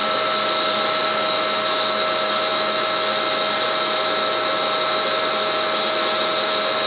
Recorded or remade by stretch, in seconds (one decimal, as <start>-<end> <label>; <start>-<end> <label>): 0.0-6.9 recorded